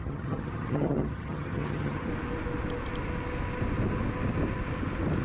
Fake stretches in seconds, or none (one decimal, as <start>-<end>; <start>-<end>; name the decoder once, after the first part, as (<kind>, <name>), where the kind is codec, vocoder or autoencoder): 0.0-2.1 (vocoder, HiFi-GAN)